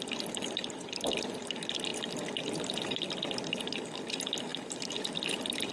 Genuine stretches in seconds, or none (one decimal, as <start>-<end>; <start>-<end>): 0.0-5.7